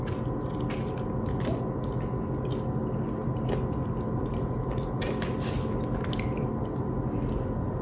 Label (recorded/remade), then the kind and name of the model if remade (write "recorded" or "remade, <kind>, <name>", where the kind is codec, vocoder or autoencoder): recorded